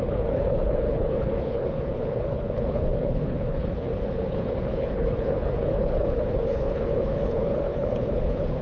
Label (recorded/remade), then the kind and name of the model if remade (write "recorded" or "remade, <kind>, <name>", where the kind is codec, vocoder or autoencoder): remade, codec, HILCodec